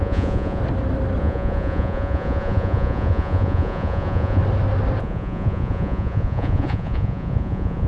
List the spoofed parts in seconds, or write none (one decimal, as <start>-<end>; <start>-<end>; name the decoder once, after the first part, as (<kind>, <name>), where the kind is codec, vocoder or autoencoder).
0.0-0.6 (vocoder, Vocos); 1.2-4.4; 5.0-7.9